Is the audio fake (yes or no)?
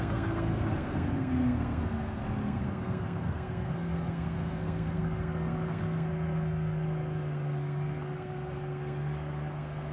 yes